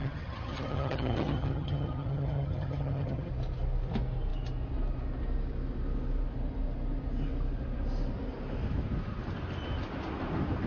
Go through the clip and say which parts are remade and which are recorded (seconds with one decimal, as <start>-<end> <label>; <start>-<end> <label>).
0.0-3.3 remade; 3.3-10.7 recorded